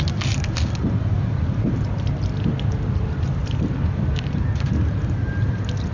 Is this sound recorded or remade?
recorded